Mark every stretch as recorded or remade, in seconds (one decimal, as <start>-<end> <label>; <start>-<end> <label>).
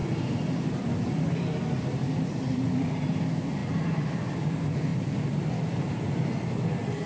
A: 0.0-2.9 remade; 2.9-4.9 recorded; 4.9-5.4 remade; 5.4-7.1 recorded